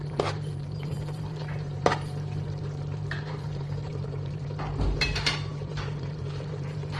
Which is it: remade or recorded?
remade